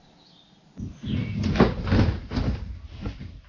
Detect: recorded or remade recorded